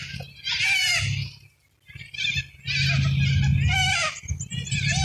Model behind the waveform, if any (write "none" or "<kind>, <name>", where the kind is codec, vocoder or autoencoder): none